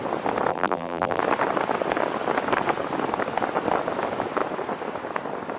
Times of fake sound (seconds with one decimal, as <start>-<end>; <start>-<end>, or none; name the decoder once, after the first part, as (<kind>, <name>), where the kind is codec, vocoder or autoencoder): 0.5-1.2 (vocoder, BigVGAN v2)